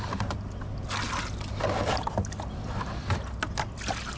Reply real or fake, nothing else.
real